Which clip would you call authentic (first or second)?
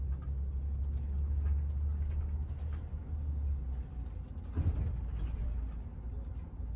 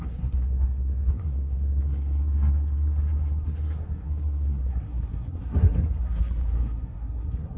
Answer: first